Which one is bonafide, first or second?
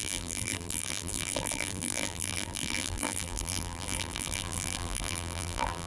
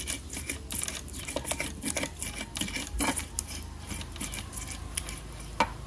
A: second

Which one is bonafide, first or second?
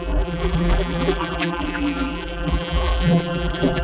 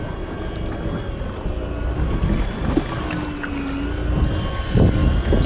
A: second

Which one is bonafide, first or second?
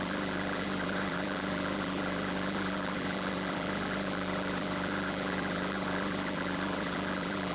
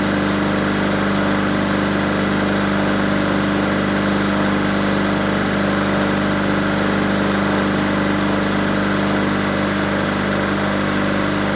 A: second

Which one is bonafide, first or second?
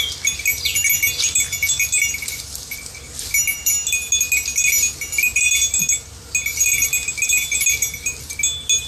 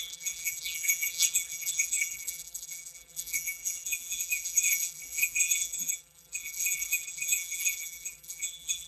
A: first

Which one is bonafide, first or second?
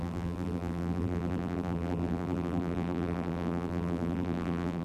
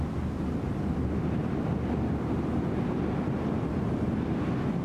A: second